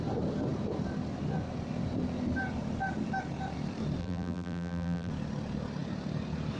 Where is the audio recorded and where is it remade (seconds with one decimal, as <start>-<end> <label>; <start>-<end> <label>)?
0.0-4.0 recorded; 4.0-5.1 remade; 5.1-6.6 recorded